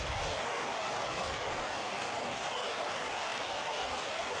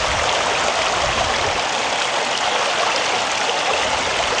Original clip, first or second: second